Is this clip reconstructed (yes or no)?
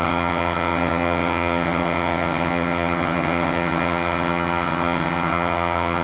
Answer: yes